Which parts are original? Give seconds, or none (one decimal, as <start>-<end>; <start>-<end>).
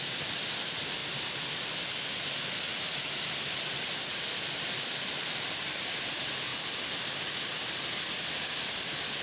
0.0-9.2